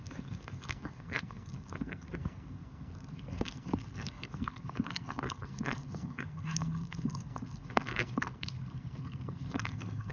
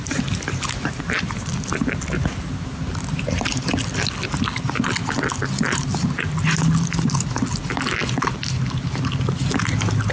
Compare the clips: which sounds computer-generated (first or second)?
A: first